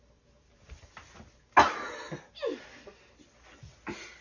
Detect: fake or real real